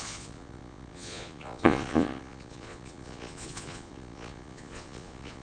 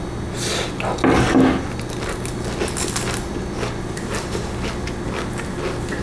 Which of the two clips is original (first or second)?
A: second